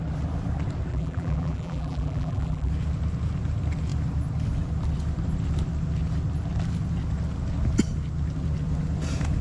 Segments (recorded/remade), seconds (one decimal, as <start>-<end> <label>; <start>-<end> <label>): 0.0-0.9 recorded; 0.9-2.7 remade; 2.7-9.4 recorded

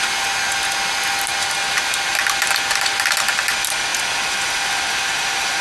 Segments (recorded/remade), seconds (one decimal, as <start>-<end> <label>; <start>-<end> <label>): 0.0-5.6 recorded

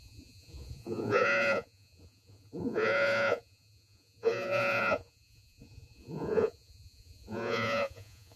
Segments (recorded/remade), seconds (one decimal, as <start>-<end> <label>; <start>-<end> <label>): 0.0-8.4 remade

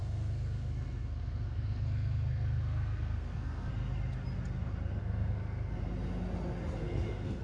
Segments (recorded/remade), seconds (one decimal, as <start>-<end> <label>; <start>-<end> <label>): 0.0-3.7 remade; 3.7-5.0 recorded; 5.0-5.8 remade; 5.8-6.8 recorded; 6.8-7.4 remade

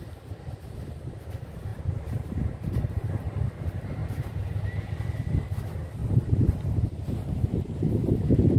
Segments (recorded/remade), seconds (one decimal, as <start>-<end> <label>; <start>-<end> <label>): 0.0-1.7 recorded; 1.7-3.1 remade; 3.1-4.0 recorded; 4.0-4.6 remade; 4.6-6.0 recorded; 6.0-7.9 remade; 7.9-8.6 recorded

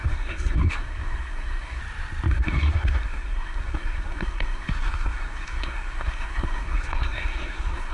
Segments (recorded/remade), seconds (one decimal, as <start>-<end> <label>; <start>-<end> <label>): 0.0-1.8 remade; 1.8-2.3 recorded; 2.3-7.9 remade